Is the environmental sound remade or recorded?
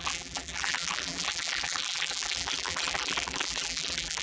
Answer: remade